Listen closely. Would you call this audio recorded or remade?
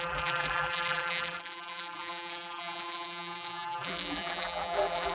remade